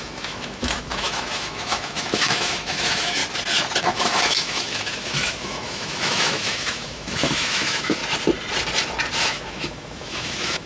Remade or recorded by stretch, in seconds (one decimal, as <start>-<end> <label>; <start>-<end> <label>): 0.0-3.2 remade; 3.2-3.8 recorded; 3.8-8.0 remade; 8.0-9.2 recorded; 9.2-10.7 remade